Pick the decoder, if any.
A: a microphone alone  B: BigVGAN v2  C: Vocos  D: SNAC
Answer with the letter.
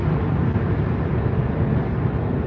A